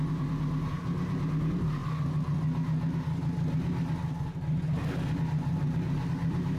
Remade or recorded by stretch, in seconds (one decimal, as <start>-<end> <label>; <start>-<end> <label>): 0.0-1.8 remade; 1.8-4.9 recorded; 4.9-6.6 remade